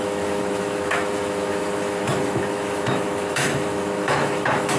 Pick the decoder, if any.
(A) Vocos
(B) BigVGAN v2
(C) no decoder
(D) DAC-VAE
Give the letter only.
D